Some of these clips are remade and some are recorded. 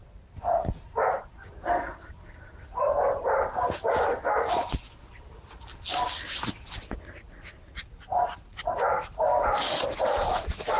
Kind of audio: recorded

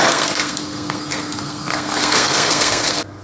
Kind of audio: remade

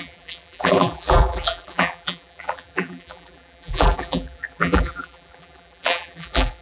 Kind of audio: remade